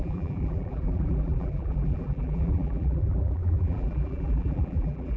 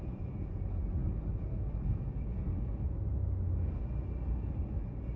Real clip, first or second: second